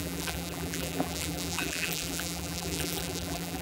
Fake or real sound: fake